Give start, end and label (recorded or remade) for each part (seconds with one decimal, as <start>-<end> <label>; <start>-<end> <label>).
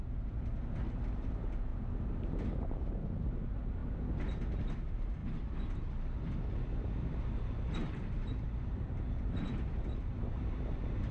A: 0.0-3.8 remade; 3.8-4.8 recorded; 4.8-5.2 remade; 5.2-7.5 recorded; 7.5-11.1 remade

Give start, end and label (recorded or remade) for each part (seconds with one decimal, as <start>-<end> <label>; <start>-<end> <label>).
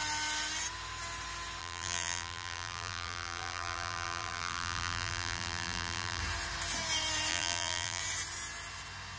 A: 0.0-1.6 recorded; 1.6-6.2 remade; 6.2-7.3 recorded; 7.3-8.0 remade; 8.0-9.2 recorded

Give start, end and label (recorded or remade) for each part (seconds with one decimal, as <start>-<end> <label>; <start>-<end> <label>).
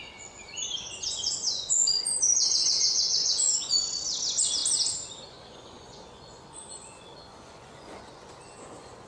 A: 0.0-4.6 remade; 4.6-5.3 recorded; 5.3-9.1 remade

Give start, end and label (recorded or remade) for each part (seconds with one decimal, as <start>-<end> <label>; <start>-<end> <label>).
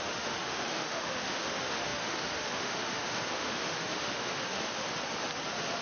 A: 0.0-4.7 remade; 4.7-5.8 recorded